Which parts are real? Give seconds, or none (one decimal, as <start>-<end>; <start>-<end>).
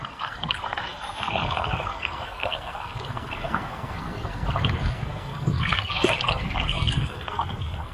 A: none